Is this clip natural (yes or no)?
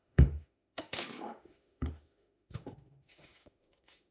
no